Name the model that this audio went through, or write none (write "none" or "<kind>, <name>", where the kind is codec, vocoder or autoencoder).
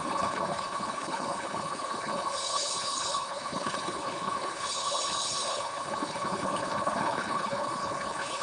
codec, HILCodec